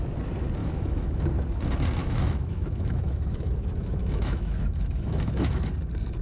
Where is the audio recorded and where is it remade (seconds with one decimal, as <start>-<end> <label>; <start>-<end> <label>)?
0.0-0.6 recorded; 0.6-1.2 remade; 1.2-2.0 recorded; 2.0-5.7 remade; 5.7-6.2 recorded